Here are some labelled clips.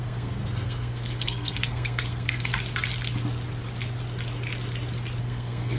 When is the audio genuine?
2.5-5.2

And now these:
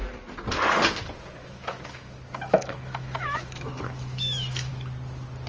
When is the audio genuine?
0.0-1.4; 4.7-5.5

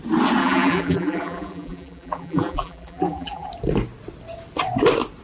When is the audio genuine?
0.0-0.4; 3.5-5.2

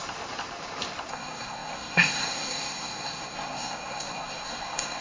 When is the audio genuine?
0.0-1.1

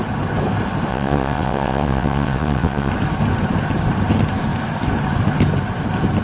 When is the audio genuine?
0.0-0.9; 2.9-6.2

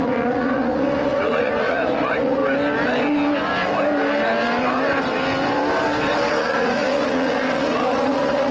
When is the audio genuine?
2.4-6.3

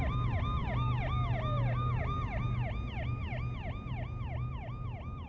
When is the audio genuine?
0.0-5.3

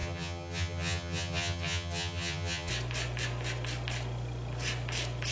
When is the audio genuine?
2.7-5.3